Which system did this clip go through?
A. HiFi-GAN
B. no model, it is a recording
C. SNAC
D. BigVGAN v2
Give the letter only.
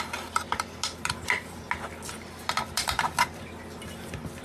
B